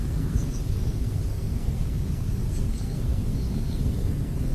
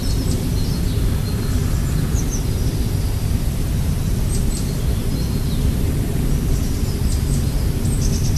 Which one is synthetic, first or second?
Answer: first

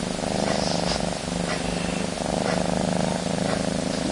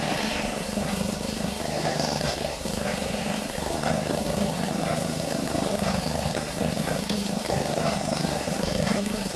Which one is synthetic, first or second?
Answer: second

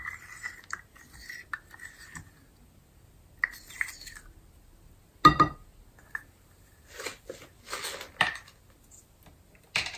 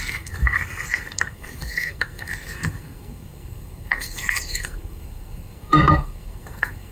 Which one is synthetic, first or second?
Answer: second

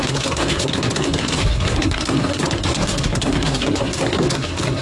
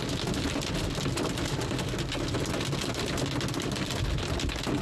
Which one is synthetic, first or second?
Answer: first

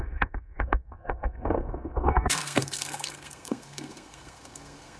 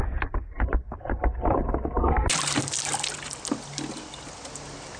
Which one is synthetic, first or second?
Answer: first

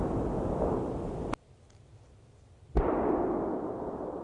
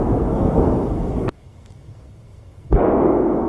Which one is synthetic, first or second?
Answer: second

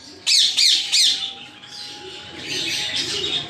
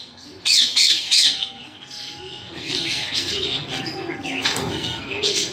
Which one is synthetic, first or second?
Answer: second